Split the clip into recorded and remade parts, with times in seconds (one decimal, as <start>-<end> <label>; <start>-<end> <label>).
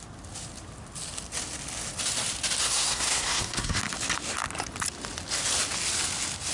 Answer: 0.0-2.6 recorded; 2.6-3.8 remade; 3.8-6.5 recorded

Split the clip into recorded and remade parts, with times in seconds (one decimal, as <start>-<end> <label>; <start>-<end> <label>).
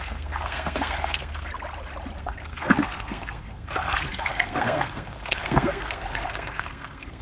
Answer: 0.0-1.5 remade; 1.5-2.2 recorded; 2.2-7.2 remade